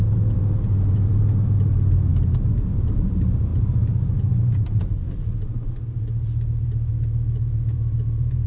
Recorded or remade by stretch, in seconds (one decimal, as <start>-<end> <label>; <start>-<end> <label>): 0.0-2.1 remade; 2.1-2.8 recorded; 2.8-8.5 remade